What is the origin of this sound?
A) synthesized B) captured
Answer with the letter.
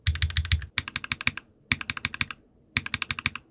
B